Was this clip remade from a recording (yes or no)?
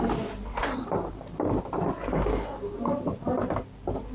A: no